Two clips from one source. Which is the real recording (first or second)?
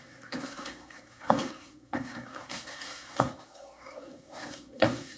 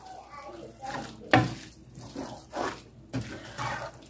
second